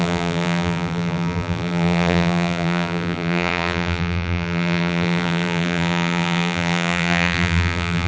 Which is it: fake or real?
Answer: fake